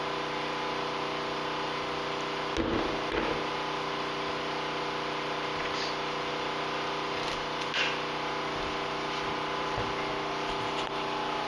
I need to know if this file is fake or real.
real